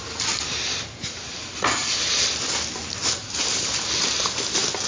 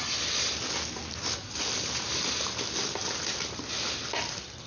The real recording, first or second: second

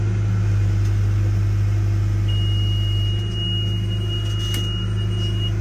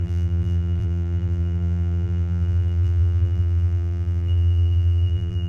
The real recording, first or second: first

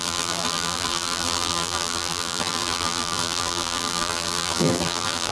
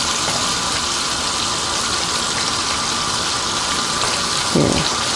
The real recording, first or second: second